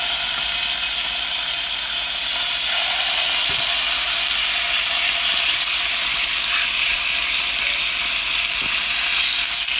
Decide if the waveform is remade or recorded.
recorded